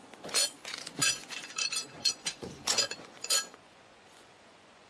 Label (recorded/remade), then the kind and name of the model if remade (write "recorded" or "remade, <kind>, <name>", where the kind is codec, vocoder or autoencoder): remade, vocoder, Vocos